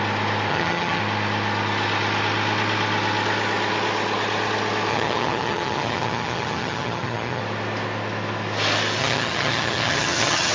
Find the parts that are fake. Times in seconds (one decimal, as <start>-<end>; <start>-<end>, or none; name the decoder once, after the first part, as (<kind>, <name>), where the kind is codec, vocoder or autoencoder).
0.5-1.0 (vocoder, HiFi-GAN); 4.9-7.4; 9.0-10.5